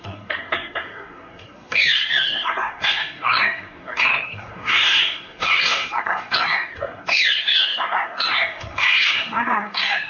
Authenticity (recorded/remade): remade